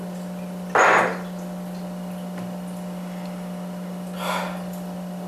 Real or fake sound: real